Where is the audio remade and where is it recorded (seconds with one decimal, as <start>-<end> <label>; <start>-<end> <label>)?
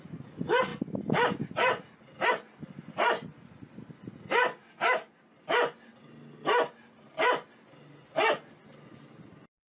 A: 0.0-9.7 recorded